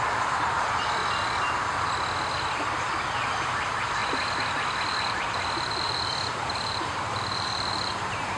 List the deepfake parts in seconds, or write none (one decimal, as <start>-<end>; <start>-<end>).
0.0-1.0; 2.3-8.4